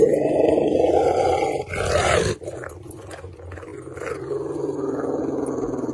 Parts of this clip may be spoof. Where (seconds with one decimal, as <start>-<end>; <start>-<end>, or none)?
none

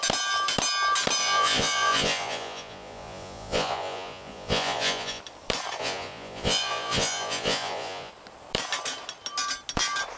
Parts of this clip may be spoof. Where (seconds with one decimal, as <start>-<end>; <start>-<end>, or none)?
1.2-5.2; 5.8-8.1

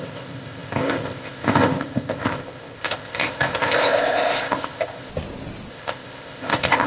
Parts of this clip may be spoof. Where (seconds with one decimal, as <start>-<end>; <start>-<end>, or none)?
0.0-5.1; 5.7-6.9

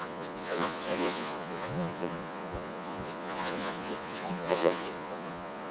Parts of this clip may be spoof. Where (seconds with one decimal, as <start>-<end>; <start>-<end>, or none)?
0.0-5.7

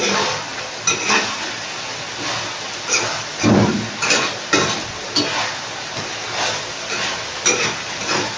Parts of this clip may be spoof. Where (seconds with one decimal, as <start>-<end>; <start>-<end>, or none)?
none

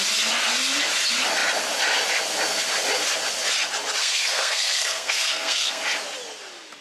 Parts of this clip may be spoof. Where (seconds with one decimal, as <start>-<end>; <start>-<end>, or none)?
4.0-5.8